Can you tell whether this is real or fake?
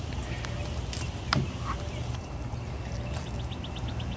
real